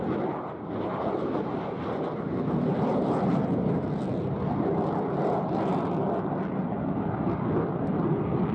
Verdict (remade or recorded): recorded